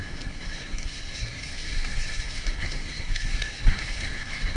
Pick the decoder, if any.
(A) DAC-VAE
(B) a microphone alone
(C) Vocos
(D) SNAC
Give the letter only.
D